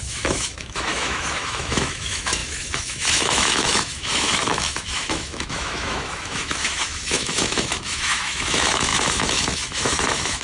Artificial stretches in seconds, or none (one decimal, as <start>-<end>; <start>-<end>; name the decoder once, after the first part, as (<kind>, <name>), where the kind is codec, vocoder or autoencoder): 0.0-10.4 (autoencoder, DAC-VAE)

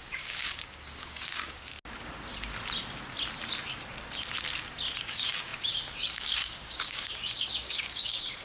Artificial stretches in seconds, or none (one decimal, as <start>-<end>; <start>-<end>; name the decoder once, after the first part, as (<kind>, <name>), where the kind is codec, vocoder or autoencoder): 0.0-1.7 (codec, DAC); 5.0-8.4

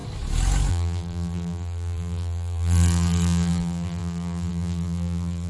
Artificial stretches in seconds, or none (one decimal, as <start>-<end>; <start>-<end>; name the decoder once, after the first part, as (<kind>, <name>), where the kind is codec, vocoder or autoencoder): 0.7-5.5 (vocoder, BigVGAN v2)

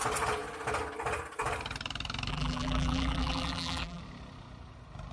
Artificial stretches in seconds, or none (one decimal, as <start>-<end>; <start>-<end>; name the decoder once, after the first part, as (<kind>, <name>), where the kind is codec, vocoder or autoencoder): 2.3-4.0 (vocoder, BigVGAN v2)

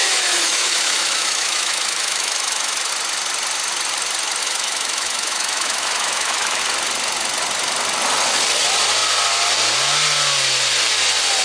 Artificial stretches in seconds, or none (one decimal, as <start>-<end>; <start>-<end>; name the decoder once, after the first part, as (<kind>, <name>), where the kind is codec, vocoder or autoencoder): 0.0-2.9 (autoencoder, DAC-VAE); 4.4-6.6

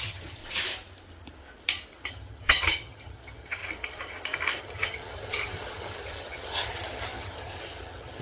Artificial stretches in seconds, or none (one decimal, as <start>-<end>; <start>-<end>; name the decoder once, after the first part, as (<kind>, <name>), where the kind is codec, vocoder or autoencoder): 0.0-0.4 (vocoder, HiFi-GAN); 2.1-3.6; 4.6-8.2